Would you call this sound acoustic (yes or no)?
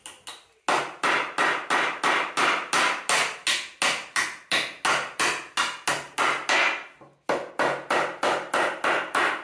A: yes